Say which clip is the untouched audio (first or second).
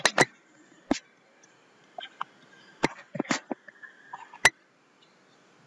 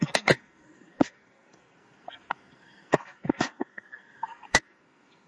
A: first